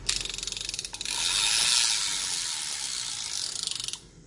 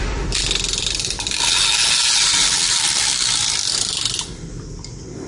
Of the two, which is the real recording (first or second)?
first